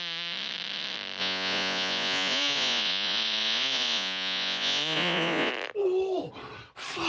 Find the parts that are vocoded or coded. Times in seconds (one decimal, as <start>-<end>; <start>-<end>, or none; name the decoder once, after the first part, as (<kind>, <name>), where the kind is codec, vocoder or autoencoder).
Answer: 1.2-5.5 (vocoder, Vocos)